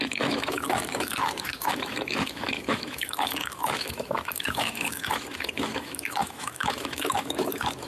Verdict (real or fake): fake